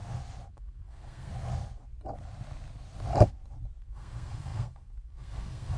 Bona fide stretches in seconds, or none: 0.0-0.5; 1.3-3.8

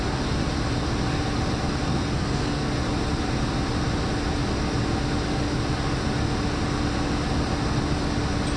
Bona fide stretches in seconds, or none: 0.0-1.9; 2.7-8.6

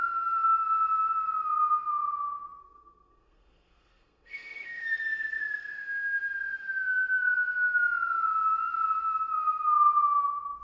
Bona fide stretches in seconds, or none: 0.0-2.6; 5.7-10.6

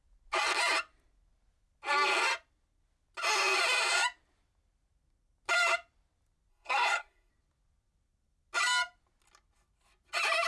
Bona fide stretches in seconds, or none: 0.0-6.5; 7.3-10.5